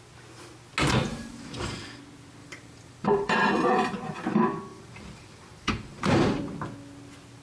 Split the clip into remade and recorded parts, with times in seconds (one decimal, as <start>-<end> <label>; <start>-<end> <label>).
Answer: 0.0-1.1 recorded; 1.1-2.0 remade; 2.0-2.4 recorded; 2.4-3.5 remade; 3.5-4.7 recorded; 4.7-6.4 remade; 6.4-7.4 recorded